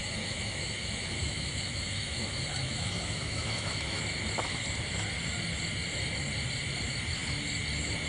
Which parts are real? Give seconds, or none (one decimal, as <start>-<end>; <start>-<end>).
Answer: 4.0-8.1